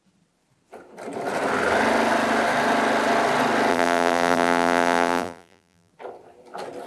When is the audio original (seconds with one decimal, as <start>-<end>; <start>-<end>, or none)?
0.0-3.7; 5.9-6.9